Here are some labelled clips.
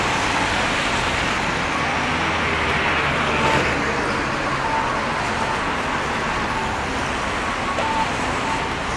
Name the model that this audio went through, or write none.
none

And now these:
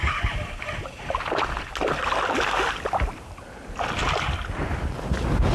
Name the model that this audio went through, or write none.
none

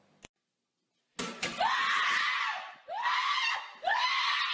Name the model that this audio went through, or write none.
none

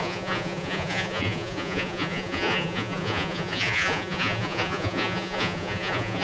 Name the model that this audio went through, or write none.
vocoder, Vocos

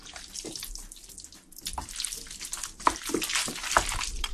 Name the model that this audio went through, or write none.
none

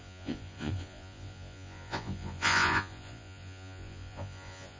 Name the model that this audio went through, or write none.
vocoder, Vocos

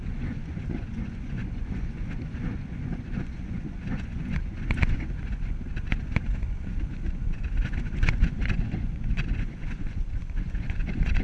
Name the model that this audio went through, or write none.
vocoder, Vocos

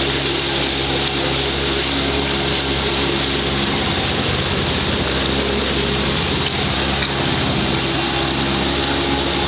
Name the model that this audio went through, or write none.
none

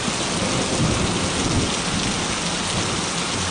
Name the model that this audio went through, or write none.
none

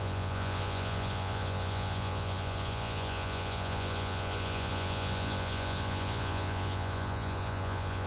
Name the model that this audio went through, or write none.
vocoder, Vocos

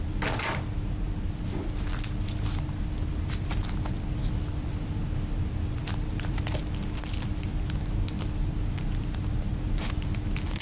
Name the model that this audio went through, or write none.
none